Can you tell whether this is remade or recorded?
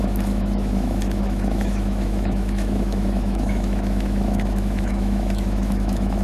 remade